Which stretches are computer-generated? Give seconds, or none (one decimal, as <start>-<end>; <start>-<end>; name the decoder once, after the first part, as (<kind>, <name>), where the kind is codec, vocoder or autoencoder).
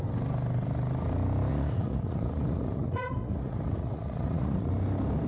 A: 1.5-4.7 (vocoder, Vocos)